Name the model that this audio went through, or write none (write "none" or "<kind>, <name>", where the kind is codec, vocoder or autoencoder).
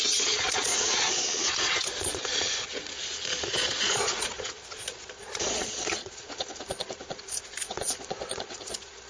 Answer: vocoder, Vocos